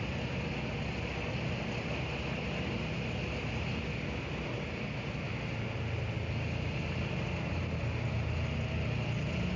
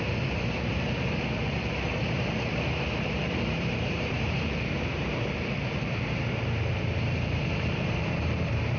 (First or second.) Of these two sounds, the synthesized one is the second